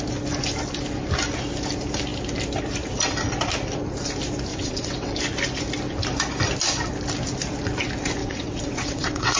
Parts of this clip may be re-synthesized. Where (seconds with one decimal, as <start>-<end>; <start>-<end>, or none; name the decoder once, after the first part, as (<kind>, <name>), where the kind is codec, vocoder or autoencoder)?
4.5-5.1 (vocoder, WaveNeXt); 8.2-9.4